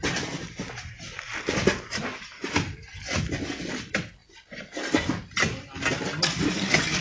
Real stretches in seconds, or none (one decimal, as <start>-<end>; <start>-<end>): 0.0-7.0